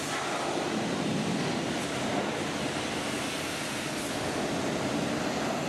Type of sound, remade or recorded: recorded